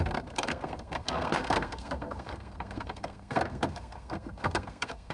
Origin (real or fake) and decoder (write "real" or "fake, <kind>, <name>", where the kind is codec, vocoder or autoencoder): fake, codec, SNAC